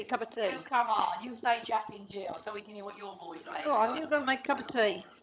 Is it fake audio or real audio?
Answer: fake